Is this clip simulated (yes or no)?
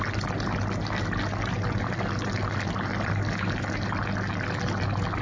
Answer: no